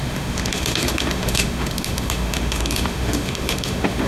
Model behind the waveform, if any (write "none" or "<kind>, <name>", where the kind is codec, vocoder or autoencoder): autoencoder, DAC-VAE